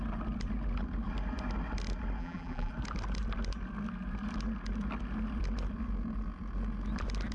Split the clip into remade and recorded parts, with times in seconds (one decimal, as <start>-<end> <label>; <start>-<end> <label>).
0.0-2.2 recorded; 2.2-2.7 remade; 2.7-7.3 recorded